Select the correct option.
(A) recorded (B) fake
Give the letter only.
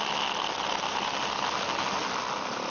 A